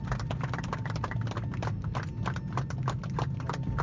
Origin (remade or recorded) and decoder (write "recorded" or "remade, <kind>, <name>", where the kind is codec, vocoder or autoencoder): recorded